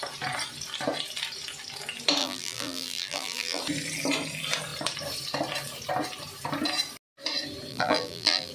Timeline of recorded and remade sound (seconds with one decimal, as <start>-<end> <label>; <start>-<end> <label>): 0.0-2.2 recorded; 2.2-3.6 remade; 3.6-7.7 recorded; 7.7-8.5 remade